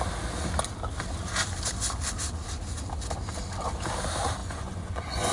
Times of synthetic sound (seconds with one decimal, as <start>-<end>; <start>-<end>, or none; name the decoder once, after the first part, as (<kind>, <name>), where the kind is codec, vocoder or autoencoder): 4.4-5.3 (vocoder, Vocos)